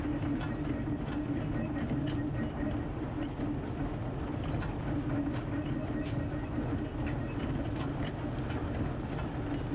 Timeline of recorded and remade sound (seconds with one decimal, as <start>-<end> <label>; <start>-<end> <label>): 0.0-4.0 recorded; 4.0-4.8 remade; 4.8-6.9 recorded; 6.9-7.5 remade; 7.5-9.7 recorded